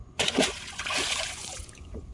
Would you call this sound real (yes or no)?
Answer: no